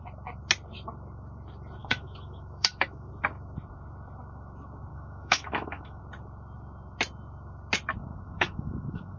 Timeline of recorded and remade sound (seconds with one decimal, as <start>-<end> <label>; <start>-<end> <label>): 0.0-1.8 recorded; 1.8-3.1 remade; 3.1-4.9 recorded; 4.9-6.0 remade; 6.0-8.1 recorded; 8.1-9.2 remade